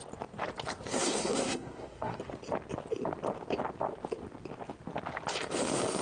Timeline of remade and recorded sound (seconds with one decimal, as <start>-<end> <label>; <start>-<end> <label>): 0.0-0.9 recorded; 0.9-2.2 remade; 2.2-6.0 recorded